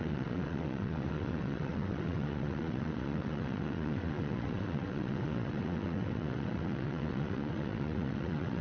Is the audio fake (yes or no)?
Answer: yes